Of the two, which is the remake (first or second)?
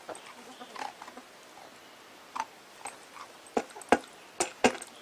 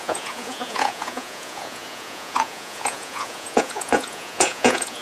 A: second